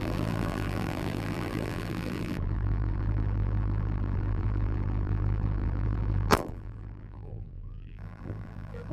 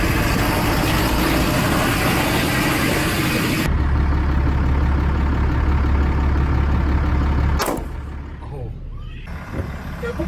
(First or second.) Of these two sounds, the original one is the second